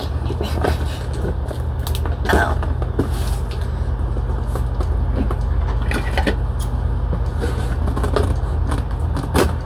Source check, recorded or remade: recorded